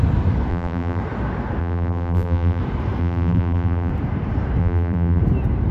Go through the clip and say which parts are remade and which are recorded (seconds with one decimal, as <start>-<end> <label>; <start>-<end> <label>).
0.0-0.5 recorded; 0.5-1.0 remade; 1.0-1.6 recorded; 1.6-2.6 remade; 2.6-3.0 recorded; 3.0-3.9 remade; 3.9-4.6 recorded; 4.6-5.2 remade; 5.2-5.7 recorded